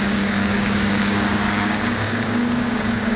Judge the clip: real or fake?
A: fake